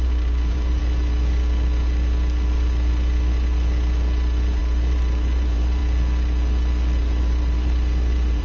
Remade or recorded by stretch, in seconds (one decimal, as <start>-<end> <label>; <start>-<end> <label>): 0.0-0.8 remade; 0.8-4.6 recorded; 4.6-5.8 remade; 5.8-7.0 recorded; 7.0-8.4 remade

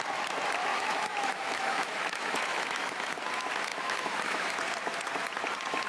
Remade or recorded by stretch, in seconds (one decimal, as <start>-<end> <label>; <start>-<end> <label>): 0.0-0.7 recorded; 0.7-3.1 remade; 3.1-3.7 recorded; 3.7-4.6 remade; 4.6-5.9 recorded

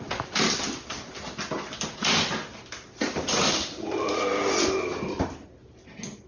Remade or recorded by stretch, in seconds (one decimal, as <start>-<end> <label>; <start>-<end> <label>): 0.0-6.3 recorded

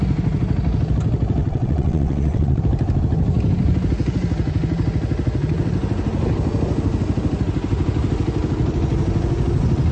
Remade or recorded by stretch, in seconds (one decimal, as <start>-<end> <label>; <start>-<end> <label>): 0.0-1.4 recorded; 1.4-2.6 remade; 2.6-9.9 recorded

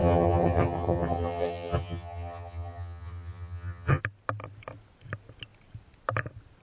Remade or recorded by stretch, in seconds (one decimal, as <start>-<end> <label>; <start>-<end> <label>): 0.0-4.0 remade; 4.0-6.6 recorded

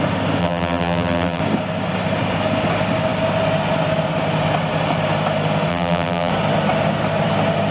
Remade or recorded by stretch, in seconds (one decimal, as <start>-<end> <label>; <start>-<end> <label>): 0.0-0.4 recorded; 0.4-1.4 remade; 1.4-5.7 recorded; 5.7-6.3 remade; 6.3-7.7 recorded

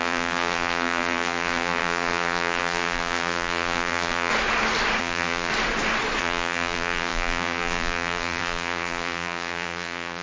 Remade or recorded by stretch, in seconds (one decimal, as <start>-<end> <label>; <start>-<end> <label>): 0.0-4.3 remade; 4.3-5.0 recorded; 5.0-5.5 remade; 5.5-6.2 recorded; 6.2-10.2 remade

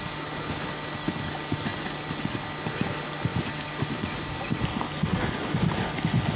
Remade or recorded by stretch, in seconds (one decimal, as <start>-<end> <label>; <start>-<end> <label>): 0.0-6.4 recorded